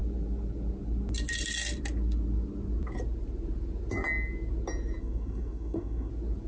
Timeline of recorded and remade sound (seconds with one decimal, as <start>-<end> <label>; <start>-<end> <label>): 0.0-5.0 recorded; 5.0-6.1 remade; 6.1-6.5 recorded